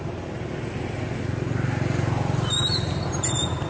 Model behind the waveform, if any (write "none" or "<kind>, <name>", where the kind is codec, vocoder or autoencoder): none